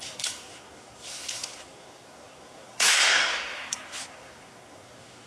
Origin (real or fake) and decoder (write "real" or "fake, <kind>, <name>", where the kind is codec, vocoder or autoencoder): fake, codec, SNAC